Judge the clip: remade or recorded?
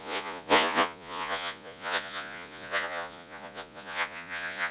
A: remade